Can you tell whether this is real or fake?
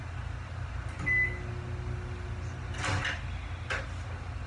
real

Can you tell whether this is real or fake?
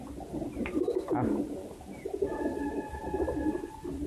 real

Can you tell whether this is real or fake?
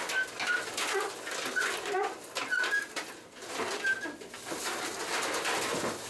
real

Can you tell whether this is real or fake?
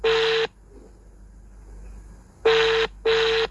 real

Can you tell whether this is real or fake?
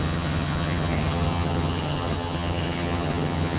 fake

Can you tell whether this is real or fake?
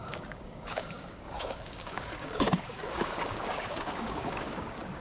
fake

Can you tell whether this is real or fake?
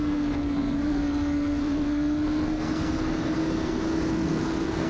fake